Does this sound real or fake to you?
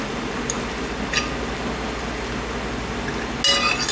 real